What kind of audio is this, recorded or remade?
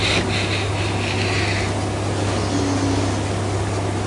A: recorded